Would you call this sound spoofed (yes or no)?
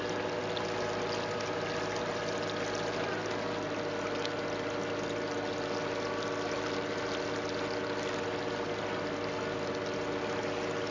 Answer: no